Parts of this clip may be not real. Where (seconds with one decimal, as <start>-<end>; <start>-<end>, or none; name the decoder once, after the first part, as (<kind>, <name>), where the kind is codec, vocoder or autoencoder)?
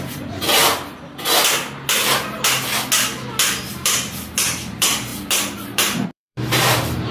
0.0-0.6 (vocoder, BigVGAN v2); 3.7-7.1